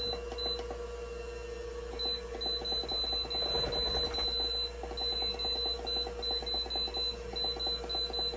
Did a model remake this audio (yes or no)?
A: no